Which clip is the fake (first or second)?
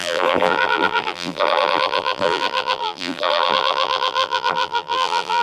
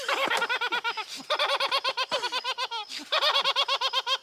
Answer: first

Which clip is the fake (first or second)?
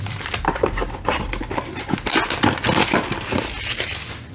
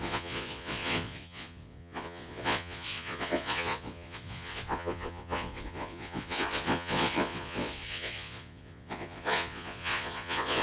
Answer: second